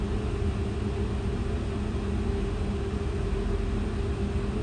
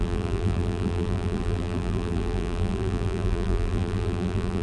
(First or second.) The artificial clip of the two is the second